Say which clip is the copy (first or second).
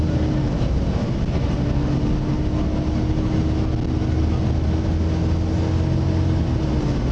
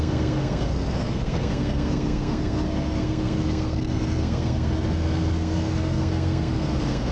second